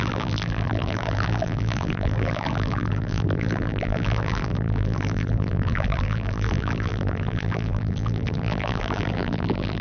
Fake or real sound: fake